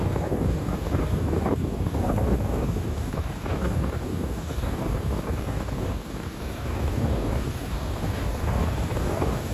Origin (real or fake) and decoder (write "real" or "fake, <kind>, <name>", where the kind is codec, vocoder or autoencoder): fake, codec, DAC